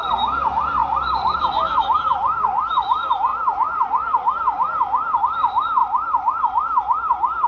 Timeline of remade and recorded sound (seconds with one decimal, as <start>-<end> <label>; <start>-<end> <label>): 0.0-7.5 recorded